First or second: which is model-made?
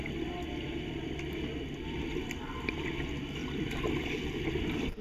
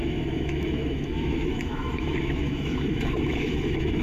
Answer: second